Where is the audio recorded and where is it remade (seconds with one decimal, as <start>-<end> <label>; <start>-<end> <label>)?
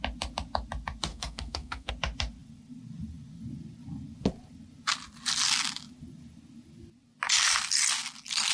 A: 0.0-1.1 recorded; 1.1-1.9 remade; 1.9-8.5 recorded